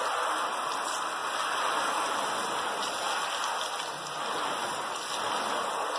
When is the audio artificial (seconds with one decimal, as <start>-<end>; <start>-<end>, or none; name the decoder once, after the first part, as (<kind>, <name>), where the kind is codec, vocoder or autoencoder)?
none

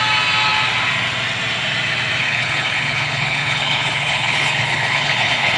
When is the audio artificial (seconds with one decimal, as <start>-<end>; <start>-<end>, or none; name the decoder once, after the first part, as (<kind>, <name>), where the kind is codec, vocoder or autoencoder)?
2.2-5.6 (codec, HILCodec)